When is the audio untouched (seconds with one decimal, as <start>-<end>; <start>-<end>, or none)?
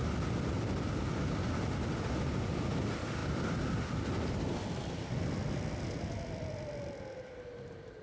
0.0-8.0